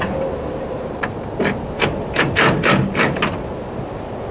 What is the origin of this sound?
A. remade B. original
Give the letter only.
B